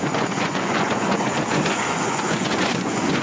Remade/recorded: remade